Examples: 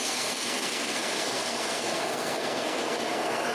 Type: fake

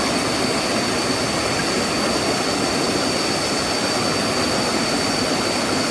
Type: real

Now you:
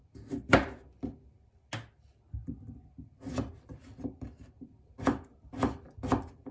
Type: real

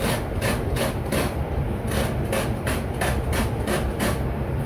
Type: fake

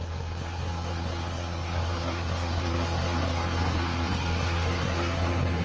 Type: fake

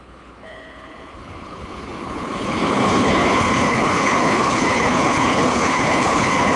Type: fake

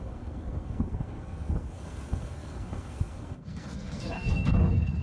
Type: fake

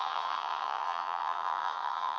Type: fake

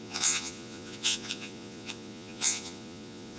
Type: fake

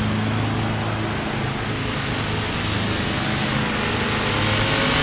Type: real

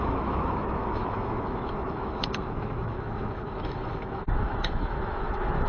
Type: fake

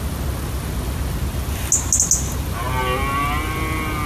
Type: real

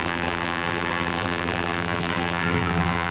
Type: fake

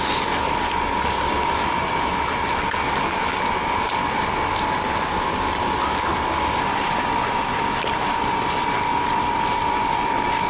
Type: fake